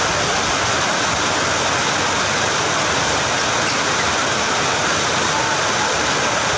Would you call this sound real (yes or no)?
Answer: yes